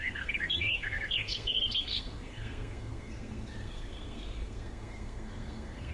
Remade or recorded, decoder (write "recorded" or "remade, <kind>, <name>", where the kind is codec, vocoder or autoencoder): remade, codec, SNAC